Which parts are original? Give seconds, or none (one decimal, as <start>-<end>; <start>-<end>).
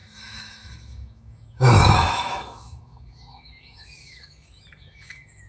none